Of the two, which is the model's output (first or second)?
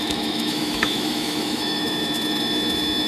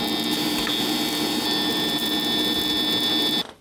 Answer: first